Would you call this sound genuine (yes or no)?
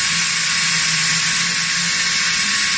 yes